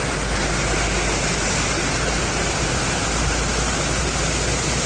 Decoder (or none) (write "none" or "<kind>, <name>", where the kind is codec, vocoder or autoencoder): none